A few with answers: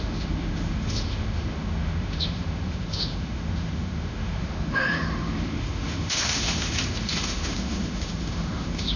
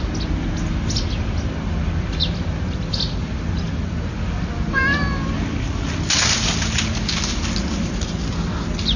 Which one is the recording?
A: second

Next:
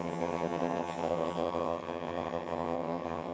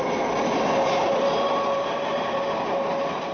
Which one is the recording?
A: second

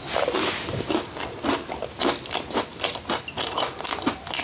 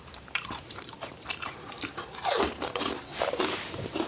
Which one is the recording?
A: first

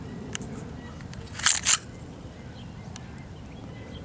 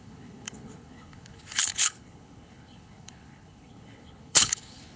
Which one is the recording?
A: first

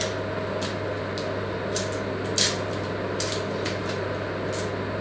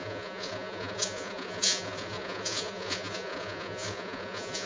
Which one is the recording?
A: first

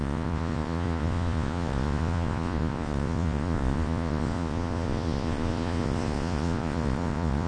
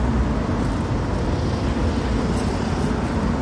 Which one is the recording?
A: second